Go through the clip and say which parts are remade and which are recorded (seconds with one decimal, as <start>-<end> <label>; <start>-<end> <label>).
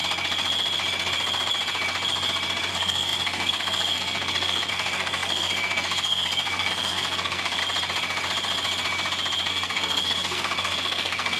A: 0.0-2.7 recorded; 2.7-7.6 remade; 7.6-9.5 recorded; 9.5-11.4 remade